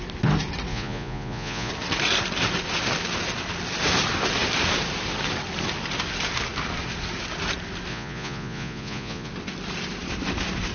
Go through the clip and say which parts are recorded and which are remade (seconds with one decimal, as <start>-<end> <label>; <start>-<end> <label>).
0.0-0.7 recorded; 0.7-1.7 remade; 1.7-7.9 recorded; 7.9-9.3 remade; 9.3-10.7 recorded